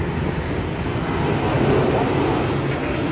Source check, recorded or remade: recorded